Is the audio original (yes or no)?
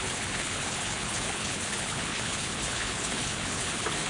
no